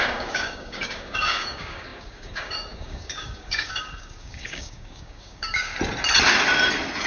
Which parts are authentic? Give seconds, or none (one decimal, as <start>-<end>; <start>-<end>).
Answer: 5.7-7.1